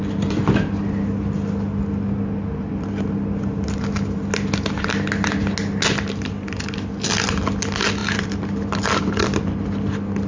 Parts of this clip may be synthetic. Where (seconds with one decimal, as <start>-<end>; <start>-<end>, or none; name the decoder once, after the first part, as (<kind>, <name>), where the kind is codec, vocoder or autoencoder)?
none